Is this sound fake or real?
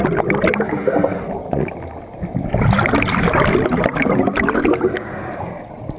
real